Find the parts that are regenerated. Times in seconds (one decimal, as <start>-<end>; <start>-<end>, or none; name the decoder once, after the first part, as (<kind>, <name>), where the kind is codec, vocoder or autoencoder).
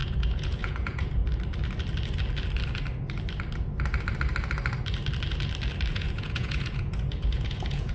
0.0-1.2 (vocoder, Vocos); 5.9-7.9